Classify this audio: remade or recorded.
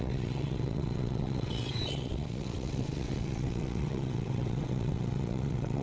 remade